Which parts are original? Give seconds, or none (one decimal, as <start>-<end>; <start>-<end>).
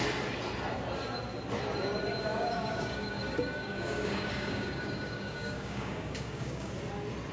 0.0-2.3; 6.7-7.3